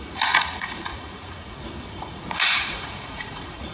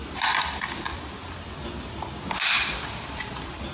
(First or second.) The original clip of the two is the second